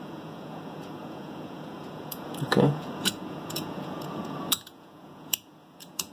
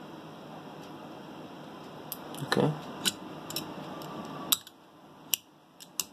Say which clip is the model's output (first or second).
first